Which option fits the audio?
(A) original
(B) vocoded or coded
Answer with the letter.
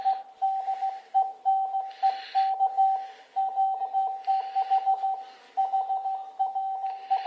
A